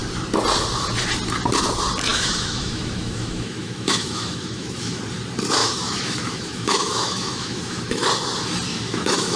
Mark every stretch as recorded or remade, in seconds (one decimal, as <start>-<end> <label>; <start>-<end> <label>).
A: 0.0-2.1 recorded; 2.1-5.0 remade; 5.0-5.6 recorded; 5.6-8.1 remade; 8.1-8.7 recorded; 8.7-9.4 remade